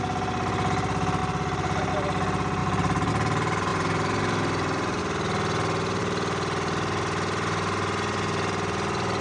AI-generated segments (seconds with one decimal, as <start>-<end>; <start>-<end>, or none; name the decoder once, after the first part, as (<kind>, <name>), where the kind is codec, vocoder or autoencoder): 1.2-1.9 (vocoder, BigVGAN v2); 2.6-3.1; 3.7-5.0